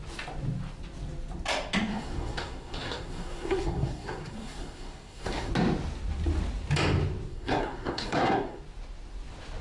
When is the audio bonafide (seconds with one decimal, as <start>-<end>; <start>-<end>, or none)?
0.0-1.9; 5.5-7.3; 8.6-9.6